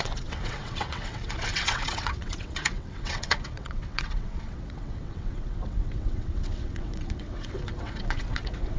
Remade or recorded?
remade